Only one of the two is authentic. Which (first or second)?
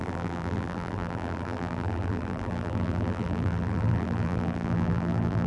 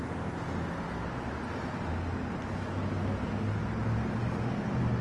second